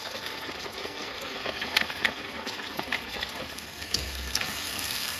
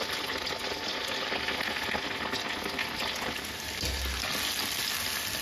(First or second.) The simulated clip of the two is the first